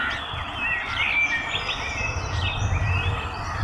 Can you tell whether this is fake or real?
real